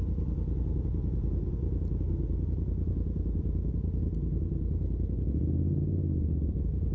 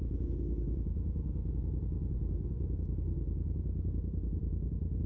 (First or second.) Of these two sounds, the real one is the first